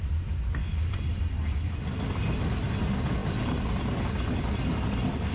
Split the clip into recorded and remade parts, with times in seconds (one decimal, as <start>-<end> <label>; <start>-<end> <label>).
0.0-5.3 recorded